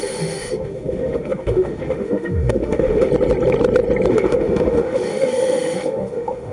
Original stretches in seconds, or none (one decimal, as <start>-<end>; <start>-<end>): 3.1-4.1